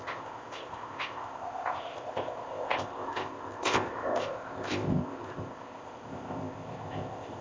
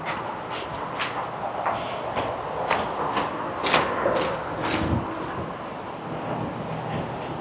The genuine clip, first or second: second